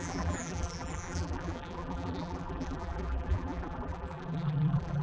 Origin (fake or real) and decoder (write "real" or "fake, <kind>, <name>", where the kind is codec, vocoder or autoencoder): fake, vocoder, BigVGAN v2